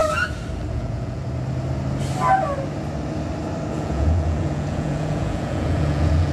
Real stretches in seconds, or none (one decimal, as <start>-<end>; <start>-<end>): 0.0-0.7; 1.2-3.7